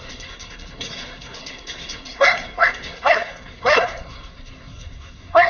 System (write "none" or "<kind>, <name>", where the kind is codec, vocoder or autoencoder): codec, SNAC